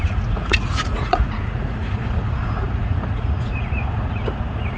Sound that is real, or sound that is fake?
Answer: fake